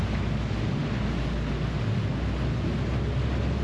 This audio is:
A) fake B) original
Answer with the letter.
B